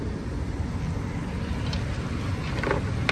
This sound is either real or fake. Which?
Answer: real